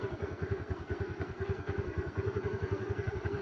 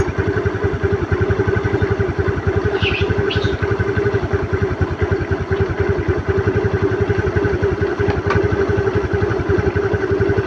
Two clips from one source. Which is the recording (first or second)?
second